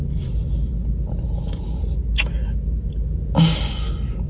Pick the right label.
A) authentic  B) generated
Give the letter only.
A